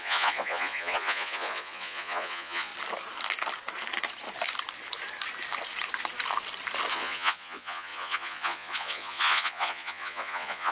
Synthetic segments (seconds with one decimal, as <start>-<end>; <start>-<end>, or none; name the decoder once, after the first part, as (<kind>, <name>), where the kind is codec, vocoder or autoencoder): 0.0-2.7 (vocoder, Vocos); 6.9-10.7